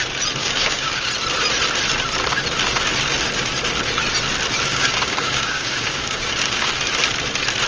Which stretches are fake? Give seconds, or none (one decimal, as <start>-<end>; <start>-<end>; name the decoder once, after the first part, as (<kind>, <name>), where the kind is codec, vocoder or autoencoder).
0.4-1.1 (codec, DAC); 4.7-6.7